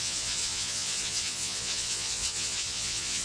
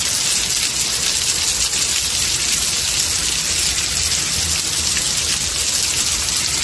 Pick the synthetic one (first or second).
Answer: first